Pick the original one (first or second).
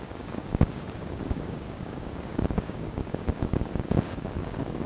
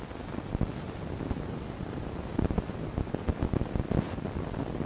second